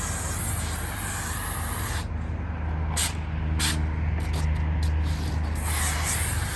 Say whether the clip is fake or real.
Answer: real